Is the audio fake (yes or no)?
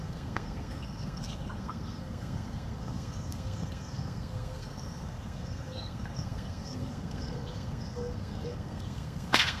yes